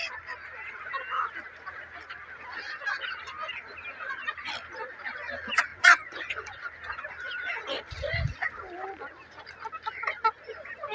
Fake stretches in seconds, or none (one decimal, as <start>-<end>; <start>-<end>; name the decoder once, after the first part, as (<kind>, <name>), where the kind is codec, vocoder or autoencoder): 5.7-6.7 (vocoder, Vocos)